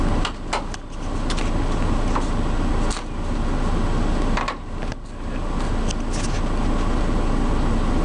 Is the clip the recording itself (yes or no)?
yes